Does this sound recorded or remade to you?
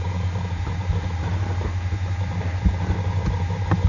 remade